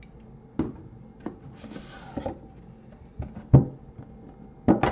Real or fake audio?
real